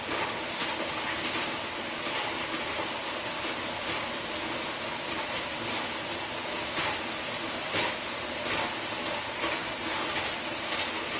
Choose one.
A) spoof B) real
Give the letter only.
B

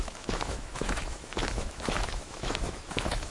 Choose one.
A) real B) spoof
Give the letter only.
B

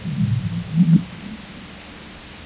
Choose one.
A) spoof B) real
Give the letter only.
B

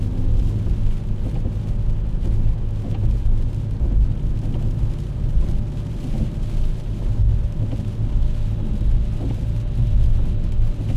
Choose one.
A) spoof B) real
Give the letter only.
B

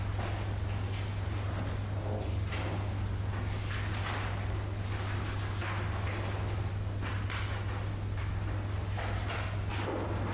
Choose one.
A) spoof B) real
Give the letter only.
B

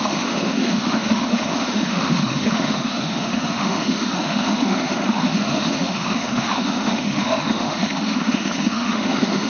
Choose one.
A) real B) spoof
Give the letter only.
B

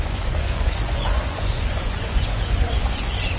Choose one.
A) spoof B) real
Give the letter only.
A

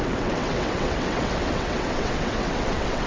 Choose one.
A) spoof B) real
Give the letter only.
A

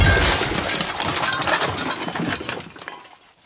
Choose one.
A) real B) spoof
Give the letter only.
A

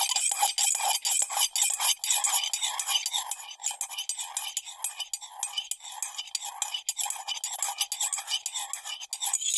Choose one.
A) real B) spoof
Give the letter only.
A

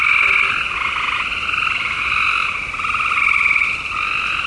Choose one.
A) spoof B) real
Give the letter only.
B